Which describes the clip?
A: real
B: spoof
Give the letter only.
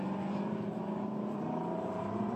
B